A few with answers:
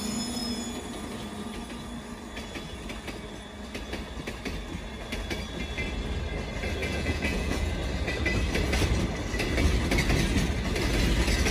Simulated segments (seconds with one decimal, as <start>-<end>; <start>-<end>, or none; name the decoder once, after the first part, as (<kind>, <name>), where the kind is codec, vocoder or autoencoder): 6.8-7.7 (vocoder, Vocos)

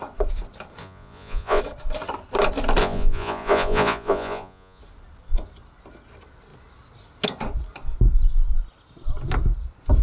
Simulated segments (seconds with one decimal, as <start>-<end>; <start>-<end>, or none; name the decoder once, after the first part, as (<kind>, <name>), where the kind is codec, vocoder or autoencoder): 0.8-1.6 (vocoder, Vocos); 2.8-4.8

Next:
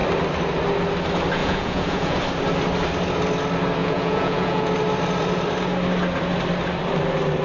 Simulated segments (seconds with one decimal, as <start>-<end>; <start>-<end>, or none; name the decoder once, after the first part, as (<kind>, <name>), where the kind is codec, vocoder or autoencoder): 1.4-2.2 (vocoder, Vocos); 3.8-4.7

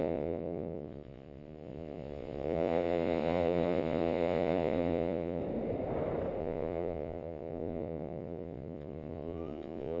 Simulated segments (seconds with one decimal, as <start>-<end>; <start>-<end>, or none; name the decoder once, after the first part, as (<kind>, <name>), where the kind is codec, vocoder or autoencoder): 0.0-5.4 (vocoder, Vocos); 6.4-10.0